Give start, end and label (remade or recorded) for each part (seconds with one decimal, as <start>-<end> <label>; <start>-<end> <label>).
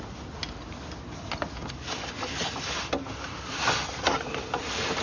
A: 0.0-5.0 recorded